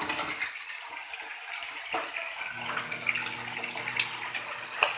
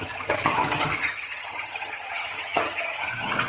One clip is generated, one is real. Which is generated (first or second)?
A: second